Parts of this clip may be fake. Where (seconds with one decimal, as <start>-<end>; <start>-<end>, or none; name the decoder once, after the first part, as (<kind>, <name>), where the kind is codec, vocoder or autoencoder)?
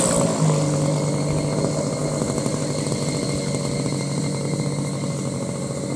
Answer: none